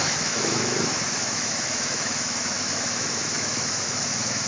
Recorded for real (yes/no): no